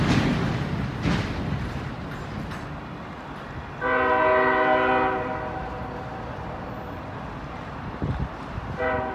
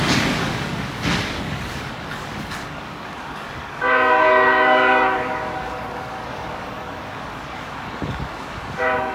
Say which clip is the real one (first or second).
first